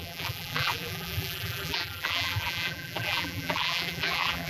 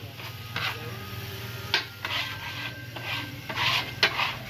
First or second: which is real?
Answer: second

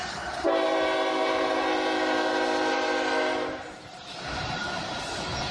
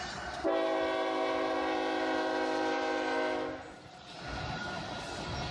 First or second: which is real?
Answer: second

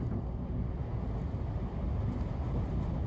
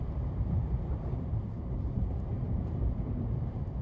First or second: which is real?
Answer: first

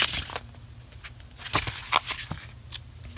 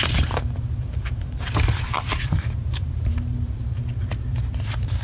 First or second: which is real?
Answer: first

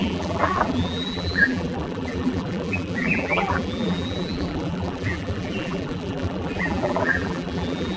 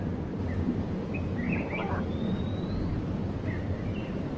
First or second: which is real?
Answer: second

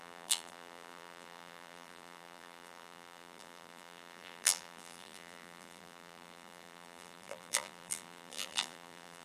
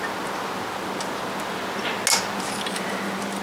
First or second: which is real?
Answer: second